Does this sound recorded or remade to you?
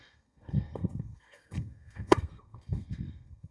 remade